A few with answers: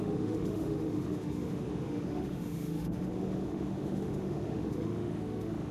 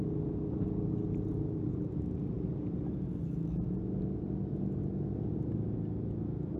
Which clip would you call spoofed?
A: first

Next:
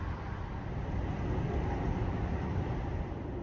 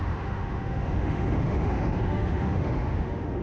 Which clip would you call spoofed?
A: second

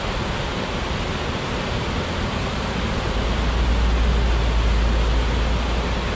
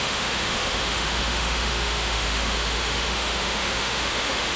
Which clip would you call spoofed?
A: second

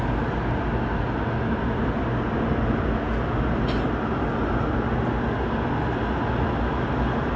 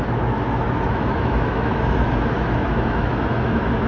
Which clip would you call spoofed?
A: second